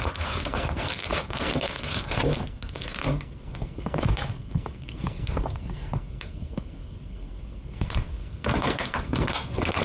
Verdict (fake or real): fake